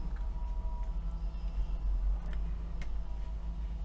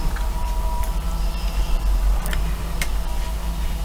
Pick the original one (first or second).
first